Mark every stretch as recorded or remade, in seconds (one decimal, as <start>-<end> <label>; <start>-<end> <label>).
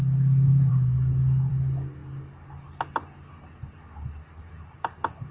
0.0-0.7 recorded; 0.7-1.5 remade; 1.5-5.3 recorded